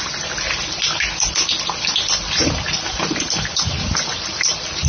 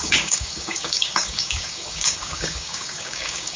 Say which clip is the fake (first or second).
second